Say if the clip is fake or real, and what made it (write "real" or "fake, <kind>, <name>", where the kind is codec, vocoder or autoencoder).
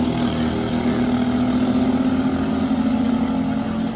real